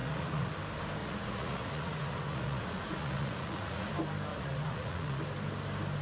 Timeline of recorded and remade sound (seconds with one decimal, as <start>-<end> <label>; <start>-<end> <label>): 0.0-0.5 remade; 0.5-1.0 recorded; 1.0-3.9 remade; 3.9-4.3 recorded; 4.3-5.2 remade; 5.2-6.0 recorded